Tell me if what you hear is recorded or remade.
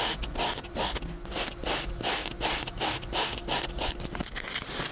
recorded